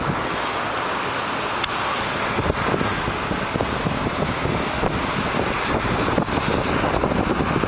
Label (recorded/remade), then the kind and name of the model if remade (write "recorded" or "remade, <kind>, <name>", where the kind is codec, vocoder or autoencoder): recorded